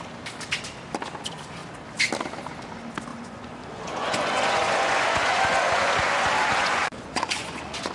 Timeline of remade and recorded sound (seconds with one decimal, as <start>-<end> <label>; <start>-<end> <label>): 0.0-3.1 recorded; 3.1-7.9 remade